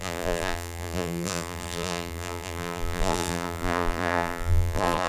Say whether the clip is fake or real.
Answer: fake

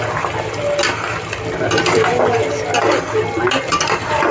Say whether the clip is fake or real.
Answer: real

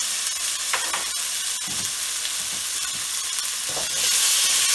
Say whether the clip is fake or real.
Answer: real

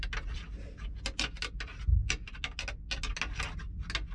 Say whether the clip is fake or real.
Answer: real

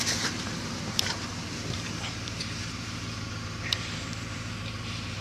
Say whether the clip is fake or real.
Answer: fake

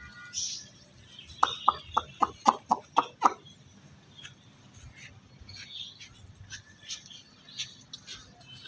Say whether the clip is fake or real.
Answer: real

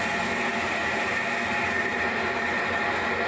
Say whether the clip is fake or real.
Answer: real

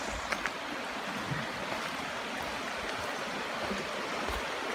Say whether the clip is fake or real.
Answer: real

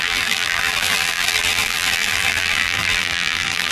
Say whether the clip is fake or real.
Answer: fake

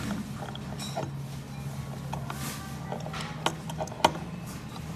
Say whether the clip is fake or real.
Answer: real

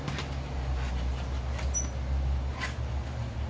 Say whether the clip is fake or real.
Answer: real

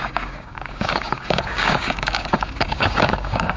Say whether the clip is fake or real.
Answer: fake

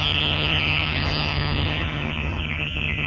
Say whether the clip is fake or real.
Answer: fake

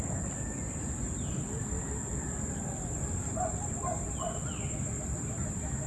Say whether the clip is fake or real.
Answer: real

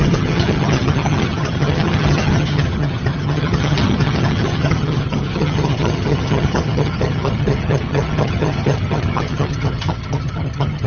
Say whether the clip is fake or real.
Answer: fake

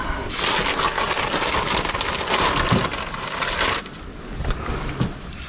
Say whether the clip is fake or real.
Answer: real